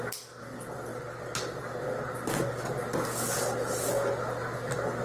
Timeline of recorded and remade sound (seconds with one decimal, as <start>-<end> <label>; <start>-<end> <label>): 0.0-5.0 recorded